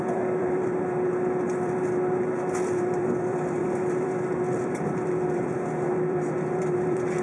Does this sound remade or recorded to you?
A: remade